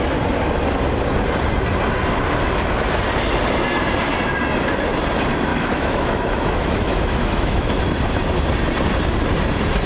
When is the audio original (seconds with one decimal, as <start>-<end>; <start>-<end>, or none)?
0.0-5.5; 7.8-9.9